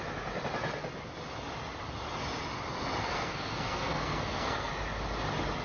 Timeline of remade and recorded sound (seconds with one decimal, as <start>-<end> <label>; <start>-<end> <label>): 0.0-3.0 recorded; 3.0-4.7 remade; 4.7-5.6 recorded